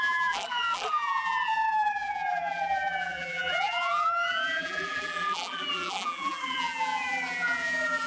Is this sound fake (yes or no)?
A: yes